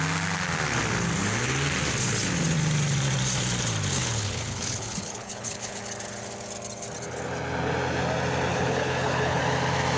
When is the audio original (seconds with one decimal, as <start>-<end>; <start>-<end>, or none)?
0.0-4.0; 5.8-8.5; 9.4-10.0